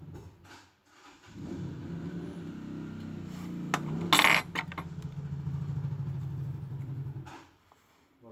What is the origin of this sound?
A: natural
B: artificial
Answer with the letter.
A